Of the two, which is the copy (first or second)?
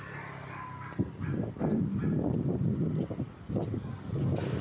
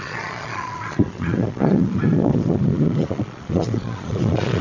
second